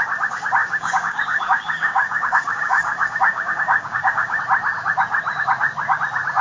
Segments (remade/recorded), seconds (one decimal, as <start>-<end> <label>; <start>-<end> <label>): 0.0-0.6 recorded; 0.6-4.4 remade; 4.4-6.4 recorded